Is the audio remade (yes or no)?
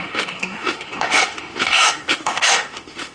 yes